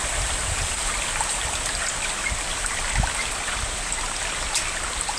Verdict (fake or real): real